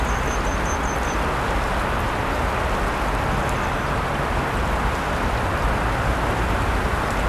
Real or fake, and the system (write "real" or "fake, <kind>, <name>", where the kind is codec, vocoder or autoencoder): real